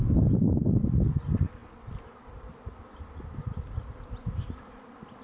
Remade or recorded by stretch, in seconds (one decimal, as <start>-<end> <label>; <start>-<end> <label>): 0.0-5.2 recorded